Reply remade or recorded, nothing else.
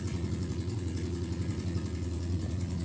remade